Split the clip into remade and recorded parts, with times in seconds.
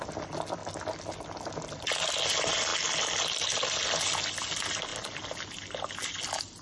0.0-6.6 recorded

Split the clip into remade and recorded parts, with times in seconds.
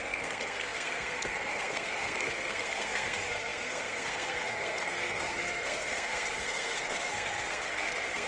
0.0-8.3 remade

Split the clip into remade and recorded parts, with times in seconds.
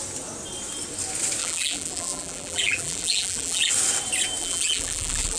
0.0-1.4 recorded; 1.4-3.7 remade; 3.7-4.4 recorded; 4.4-5.4 remade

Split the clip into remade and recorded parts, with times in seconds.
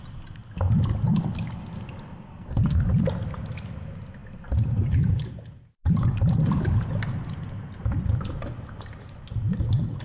0.0-2.3 recorded; 2.3-2.8 remade; 2.8-10.0 recorded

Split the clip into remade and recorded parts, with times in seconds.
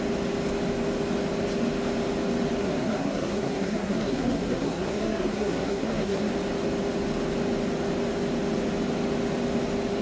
0.0-2.6 recorded; 2.6-6.3 remade; 6.3-10.0 recorded